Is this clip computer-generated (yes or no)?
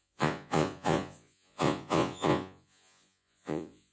yes